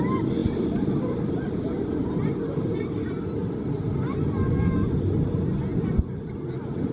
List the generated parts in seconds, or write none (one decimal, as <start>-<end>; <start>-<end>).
5.7-6.4